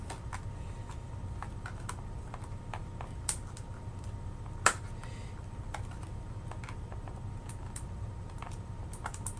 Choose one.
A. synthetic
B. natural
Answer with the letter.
B